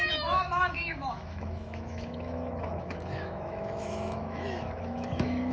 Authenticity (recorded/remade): remade